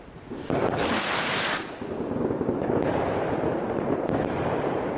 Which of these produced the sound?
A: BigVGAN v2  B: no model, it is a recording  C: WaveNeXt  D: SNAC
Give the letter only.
B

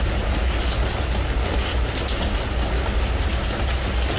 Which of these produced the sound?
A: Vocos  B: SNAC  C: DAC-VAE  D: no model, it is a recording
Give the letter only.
D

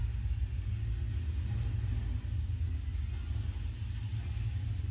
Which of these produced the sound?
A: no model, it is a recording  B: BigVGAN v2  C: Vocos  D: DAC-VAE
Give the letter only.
A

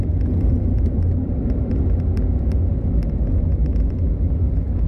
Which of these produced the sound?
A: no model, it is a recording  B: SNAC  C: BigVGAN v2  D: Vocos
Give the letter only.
A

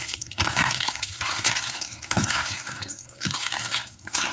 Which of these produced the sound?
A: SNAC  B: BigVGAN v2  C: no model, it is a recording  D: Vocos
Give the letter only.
A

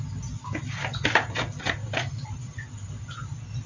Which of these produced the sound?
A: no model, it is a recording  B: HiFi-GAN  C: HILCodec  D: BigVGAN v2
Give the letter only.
A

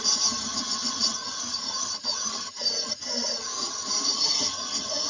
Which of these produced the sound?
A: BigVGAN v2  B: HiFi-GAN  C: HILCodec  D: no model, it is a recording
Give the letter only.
B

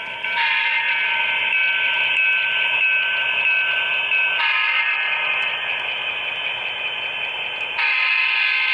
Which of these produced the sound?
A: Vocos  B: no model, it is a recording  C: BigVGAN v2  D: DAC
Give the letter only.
B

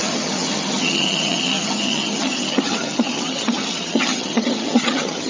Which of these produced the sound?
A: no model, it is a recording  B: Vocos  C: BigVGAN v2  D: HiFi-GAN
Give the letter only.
D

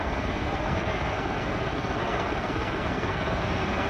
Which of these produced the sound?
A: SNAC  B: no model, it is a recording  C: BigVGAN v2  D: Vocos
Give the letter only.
A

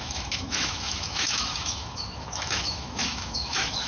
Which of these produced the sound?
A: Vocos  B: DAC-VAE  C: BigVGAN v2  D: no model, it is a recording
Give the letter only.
B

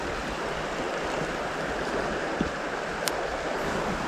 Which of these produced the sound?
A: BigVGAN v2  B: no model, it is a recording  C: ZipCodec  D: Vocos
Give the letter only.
B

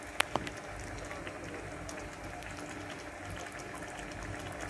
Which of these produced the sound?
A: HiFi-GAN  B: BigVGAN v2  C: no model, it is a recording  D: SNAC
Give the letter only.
C